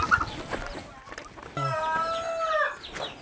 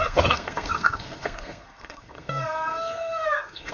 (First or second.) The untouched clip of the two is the first